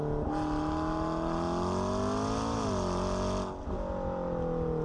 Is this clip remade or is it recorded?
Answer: recorded